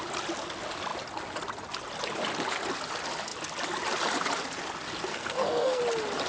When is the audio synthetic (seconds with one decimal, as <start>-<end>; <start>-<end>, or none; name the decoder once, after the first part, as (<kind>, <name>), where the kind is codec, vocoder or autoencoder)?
5.1-5.8 (codec, SNAC)